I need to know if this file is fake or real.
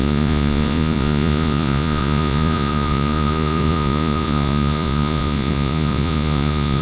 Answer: fake